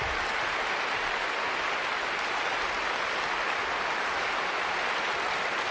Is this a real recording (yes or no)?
yes